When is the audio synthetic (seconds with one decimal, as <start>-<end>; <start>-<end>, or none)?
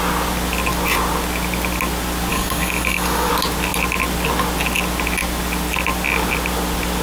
2.3-3.3